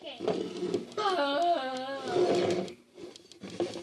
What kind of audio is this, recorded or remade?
recorded